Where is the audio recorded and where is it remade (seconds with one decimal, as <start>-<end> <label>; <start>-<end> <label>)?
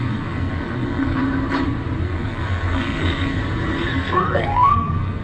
0.0-1.2 remade; 1.2-2.0 recorded; 2.0-3.4 remade; 3.4-3.9 recorded; 3.9-5.2 remade